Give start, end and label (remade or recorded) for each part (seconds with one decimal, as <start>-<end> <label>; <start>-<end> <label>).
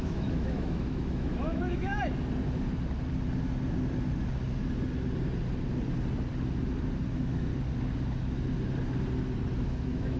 0.0-1.9 remade; 1.9-7.1 recorded; 7.1-7.5 remade; 7.5-9.6 recorded; 9.6-10.2 remade